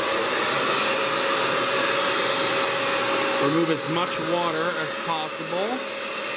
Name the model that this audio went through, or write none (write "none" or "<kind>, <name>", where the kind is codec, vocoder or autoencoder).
none